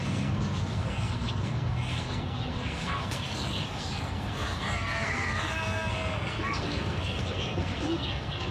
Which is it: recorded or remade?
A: remade